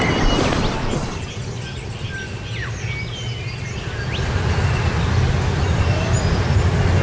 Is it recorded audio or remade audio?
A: recorded